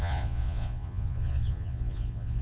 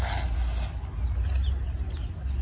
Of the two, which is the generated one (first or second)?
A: first